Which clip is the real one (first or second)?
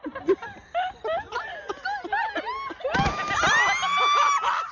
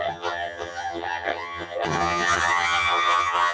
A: first